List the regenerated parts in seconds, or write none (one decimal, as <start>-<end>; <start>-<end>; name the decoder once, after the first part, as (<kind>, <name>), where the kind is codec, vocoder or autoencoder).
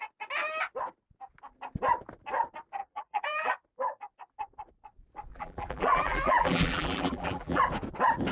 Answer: 2.8-3.5 (vocoder, BigVGAN v2); 5.3-7.6